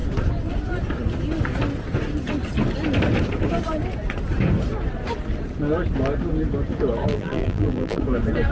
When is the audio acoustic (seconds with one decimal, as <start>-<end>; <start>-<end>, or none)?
0.0-7.1; 8.0-8.5